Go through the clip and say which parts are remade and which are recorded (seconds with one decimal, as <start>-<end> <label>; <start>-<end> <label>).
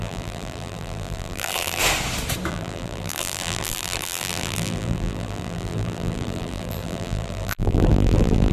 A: 0.0-1.8 remade; 1.8-2.5 recorded; 2.5-8.5 remade